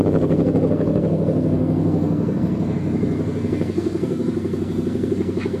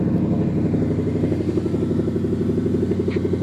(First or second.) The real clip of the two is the second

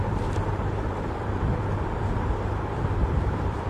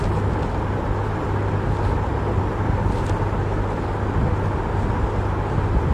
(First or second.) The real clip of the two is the second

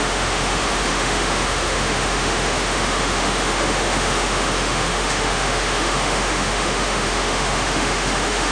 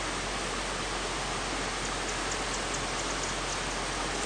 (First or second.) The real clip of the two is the second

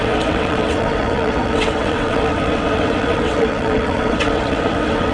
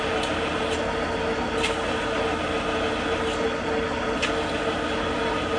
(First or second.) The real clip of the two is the second